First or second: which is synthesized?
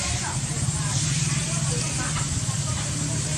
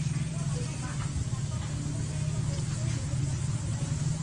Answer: first